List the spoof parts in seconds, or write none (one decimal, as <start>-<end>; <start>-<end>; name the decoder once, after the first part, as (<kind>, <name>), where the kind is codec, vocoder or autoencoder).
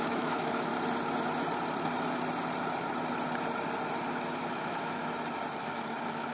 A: 0.0-0.7 (autoencoder, DAC-VAE); 4.5-5.0; 5.6-6.3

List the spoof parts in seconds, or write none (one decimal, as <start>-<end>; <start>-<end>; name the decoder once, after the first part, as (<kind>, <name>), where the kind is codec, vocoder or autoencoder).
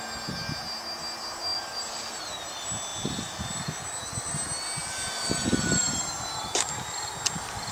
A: 1.5-2.3 (vocoder, BigVGAN v2); 2.9-3.9; 4.8-7.7